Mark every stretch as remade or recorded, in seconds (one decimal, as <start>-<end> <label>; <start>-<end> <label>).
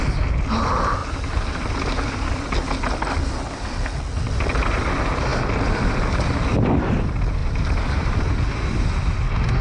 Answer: 0.0-1.0 recorded; 1.0-1.7 remade; 1.7-5.3 recorded; 5.3-6.0 remade; 6.0-7.4 recorded; 7.4-8.3 remade; 8.3-9.6 recorded